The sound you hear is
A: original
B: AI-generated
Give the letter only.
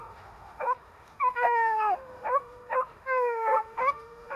B